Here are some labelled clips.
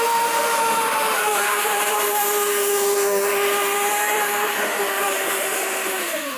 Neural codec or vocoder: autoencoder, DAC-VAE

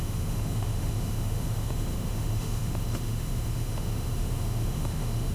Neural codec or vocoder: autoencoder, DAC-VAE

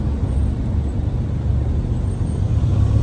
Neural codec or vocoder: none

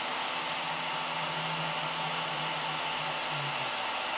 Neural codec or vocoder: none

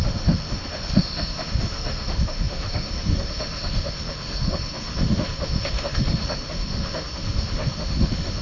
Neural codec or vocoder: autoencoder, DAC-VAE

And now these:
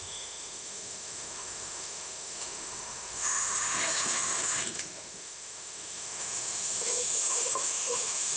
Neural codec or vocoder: autoencoder, DAC-VAE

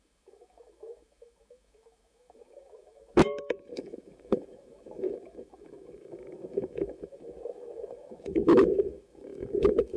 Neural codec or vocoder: autoencoder, DAC-VAE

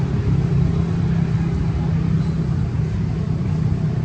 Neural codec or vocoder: none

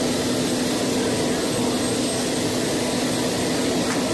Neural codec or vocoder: none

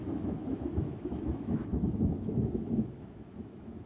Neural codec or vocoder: autoencoder, DAC-VAE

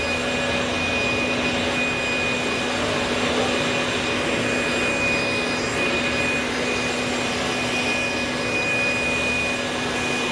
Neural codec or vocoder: none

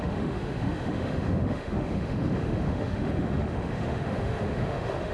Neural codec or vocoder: autoencoder, DAC-VAE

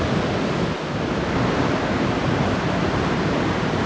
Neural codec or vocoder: none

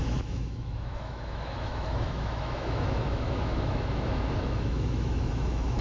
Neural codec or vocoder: autoencoder, DAC-VAE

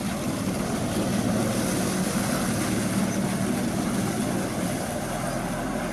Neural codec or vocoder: none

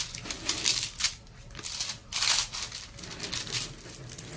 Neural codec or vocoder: none